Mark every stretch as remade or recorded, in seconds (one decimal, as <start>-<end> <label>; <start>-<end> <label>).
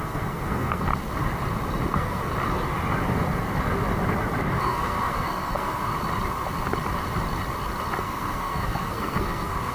0.0-0.9 remade; 0.9-1.9 recorded; 1.9-2.3 remade; 2.3-4.6 recorded; 4.6-5.9 remade; 5.9-8.0 recorded; 8.0-9.7 remade